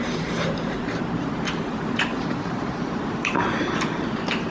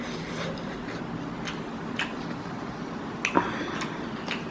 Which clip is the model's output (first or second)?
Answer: first